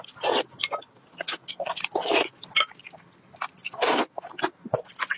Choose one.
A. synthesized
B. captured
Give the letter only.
B